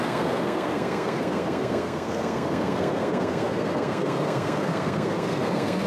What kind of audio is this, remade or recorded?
remade